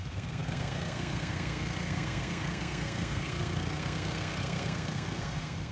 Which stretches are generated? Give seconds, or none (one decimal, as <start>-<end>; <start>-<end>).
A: 0.0-5.7